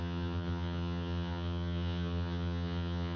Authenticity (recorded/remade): remade